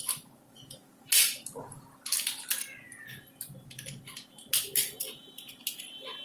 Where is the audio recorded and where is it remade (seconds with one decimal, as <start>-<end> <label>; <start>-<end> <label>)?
0.0-6.2 recorded

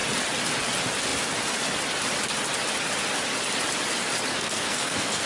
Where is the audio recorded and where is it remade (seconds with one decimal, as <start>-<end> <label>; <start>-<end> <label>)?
0.0-4.3 recorded; 4.3-5.3 remade

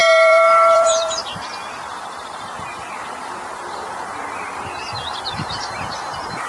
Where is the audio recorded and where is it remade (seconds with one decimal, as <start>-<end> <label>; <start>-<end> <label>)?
0.0-1.2 remade; 1.2-1.9 recorded; 1.9-5.8 remade; 5.8-6.5 recorded

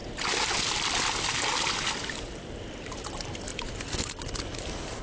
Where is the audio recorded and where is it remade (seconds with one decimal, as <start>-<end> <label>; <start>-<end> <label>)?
0.0-5.0 recorded

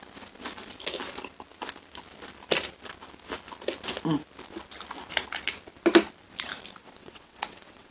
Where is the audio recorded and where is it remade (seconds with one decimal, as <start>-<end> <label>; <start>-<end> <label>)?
0.0-6.8 recorded; 6.8-7.9 remade

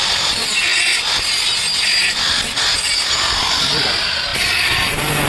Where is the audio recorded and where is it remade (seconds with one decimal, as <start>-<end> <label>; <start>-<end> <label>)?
0.0-5.3 recorded